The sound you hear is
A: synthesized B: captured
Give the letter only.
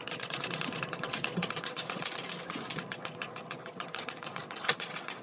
A